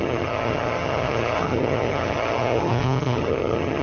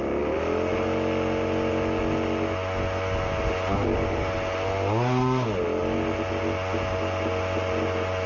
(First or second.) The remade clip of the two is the first